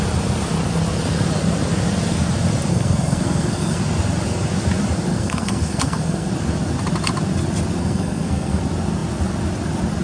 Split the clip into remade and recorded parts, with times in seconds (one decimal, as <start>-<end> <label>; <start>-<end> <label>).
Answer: 0.0-2.7 recorded; 2.7-3.8 remade; 3.8-5.1 recorded; 5.1-6.3 remade; 6.3-7.8 recorded; 7.8-8.6 remade; 8.6-10.0 recorded